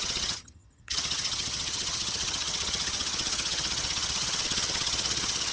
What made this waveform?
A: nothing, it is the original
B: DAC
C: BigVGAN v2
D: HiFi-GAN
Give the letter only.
D